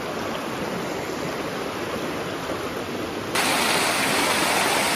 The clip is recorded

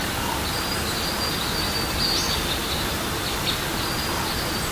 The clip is recorded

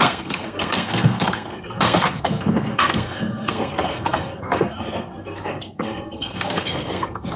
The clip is remade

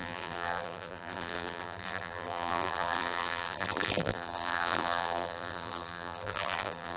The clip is remade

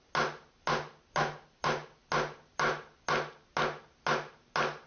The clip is recorded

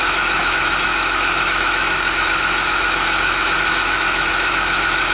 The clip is remade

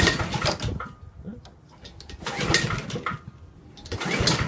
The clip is recorded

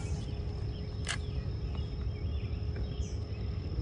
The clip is recorded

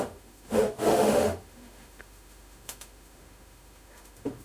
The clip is remade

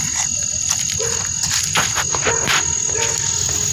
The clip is recorded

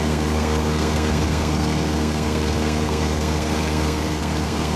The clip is remade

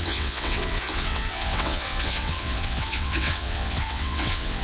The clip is remade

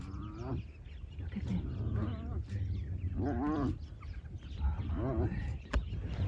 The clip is recorded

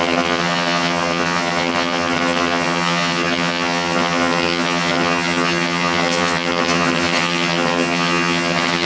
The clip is remade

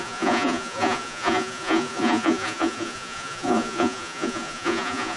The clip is remade